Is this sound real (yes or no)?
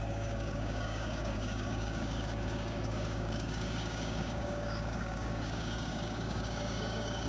no